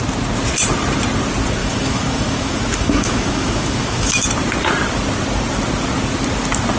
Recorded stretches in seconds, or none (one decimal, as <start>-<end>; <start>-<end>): 0.0-1.6; 4.2-6.8